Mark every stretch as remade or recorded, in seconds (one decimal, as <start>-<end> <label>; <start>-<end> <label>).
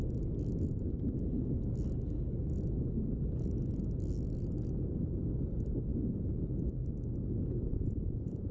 0.0-7.7 recorded; 7.7-8.5 remade